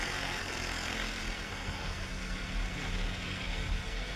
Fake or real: fake